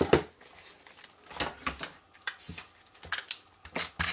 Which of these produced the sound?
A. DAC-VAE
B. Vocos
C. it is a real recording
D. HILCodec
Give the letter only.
C